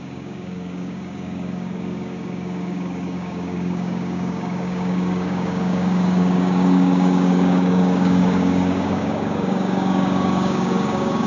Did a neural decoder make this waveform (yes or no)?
yes